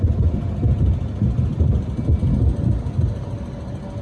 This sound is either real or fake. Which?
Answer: real